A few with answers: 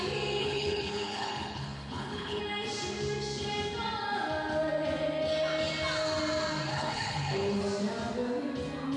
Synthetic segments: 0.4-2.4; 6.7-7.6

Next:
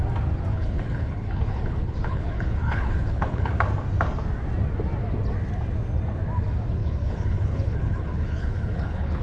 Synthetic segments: 0.5-3.5; 6.8-9.2

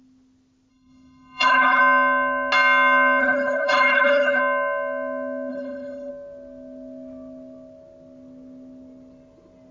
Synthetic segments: 0.7-1.8; 3.2-4.4; 5.5-6.1

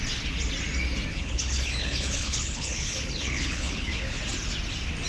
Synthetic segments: 1.1-4.2

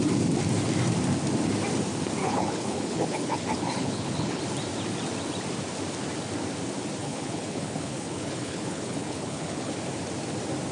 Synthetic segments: 2.2-4.4; 7.0-9.7

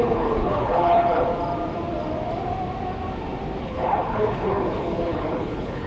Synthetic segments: 0.0-1.3; 3.6-5.9

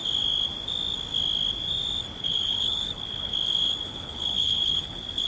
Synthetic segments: 2.2-3.3; 3.8-5.3

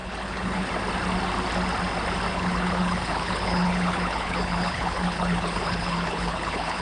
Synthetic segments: 0.0-0.7; 2.3-6.8